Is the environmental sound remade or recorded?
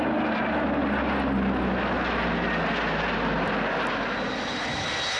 recorded